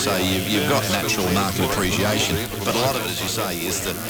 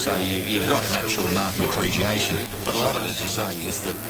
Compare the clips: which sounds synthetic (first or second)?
second